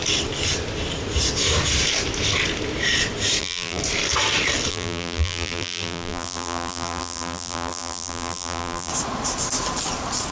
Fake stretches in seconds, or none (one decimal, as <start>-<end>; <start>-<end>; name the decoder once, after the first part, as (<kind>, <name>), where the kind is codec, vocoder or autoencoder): 3.4-3.8 (vocoder, BigVGAN v2); 4.7-8.9